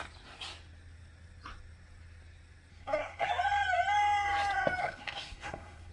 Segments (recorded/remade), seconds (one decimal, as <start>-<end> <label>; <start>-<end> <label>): 0.0-2.7 recorded; 2.7-3.3 remade; 3.3-4.8 recorded; 4.8-5.9 remade

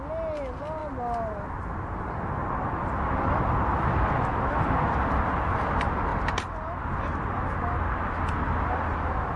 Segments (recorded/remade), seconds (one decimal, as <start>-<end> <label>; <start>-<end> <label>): 0.0-9.4 recorded

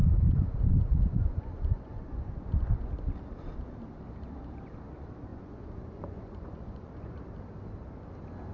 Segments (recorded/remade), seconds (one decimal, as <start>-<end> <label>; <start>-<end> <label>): 0.0-2.9 remade; 2.9-5.3 recorded; 5.3-7.2 remade; 7.2-8.5 recorded

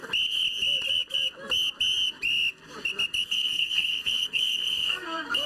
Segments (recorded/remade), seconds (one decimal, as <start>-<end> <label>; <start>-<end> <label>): 0.0-3.2 recorded; 3.2-5.5 remade

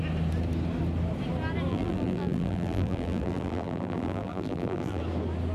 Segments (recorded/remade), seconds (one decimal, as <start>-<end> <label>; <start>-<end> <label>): 0.0-1.7 recorded; 1.7-5.0 remade; 5.0-5.5 recorded

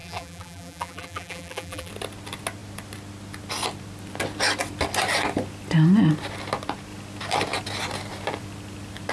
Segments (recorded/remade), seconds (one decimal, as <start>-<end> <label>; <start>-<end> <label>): 0.0-1.9 remade; 1.9-9.1 recorded

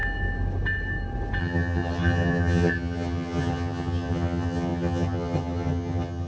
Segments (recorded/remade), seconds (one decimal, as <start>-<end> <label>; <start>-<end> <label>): 0.0-1.4 recorded; 1.4-6.3 remade

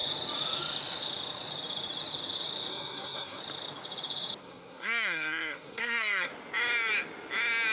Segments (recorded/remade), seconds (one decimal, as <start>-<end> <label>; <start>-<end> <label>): 0.0-2.7 recorded; 2.7-3.4 remade; 3.4-4.4 recorded; 4.4-6.3 remade; 6.3-7.7 recorded